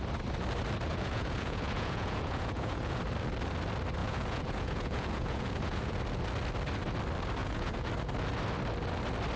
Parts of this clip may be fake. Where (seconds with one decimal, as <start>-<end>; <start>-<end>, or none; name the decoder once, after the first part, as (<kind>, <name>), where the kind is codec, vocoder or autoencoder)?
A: 0.9-3.0 (vocoder, Vocos); 4.0-6.0; 7.4-7.9